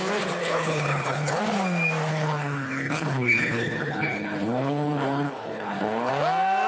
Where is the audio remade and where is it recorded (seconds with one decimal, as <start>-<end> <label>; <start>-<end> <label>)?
0.0-0.4 recorded; 0.4-1.4 remade; 1.4-2.1 recorded; 2.1-6.1 remade; 6.1-6.7 recorded